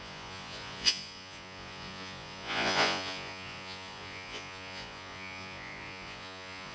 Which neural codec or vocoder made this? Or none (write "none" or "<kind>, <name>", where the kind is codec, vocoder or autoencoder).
vocoder, Vocos